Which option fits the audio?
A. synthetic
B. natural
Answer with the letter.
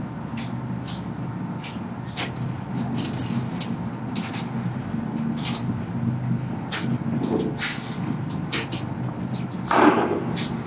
B